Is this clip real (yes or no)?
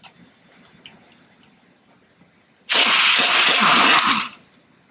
yes